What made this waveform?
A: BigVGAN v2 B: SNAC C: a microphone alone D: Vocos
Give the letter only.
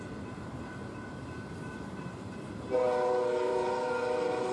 A